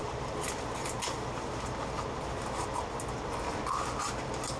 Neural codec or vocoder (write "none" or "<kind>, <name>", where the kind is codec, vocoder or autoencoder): none